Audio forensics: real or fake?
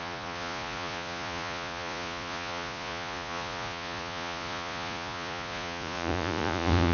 fake